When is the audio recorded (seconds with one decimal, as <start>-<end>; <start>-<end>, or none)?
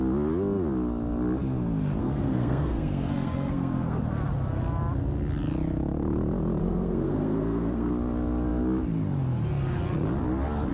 0.0-2.0; 4.0-6.6; 7.9-10.7